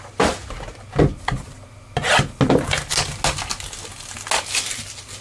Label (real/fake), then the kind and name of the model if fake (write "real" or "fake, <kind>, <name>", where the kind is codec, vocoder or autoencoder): real